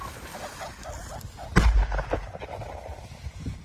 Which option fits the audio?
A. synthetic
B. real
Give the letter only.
B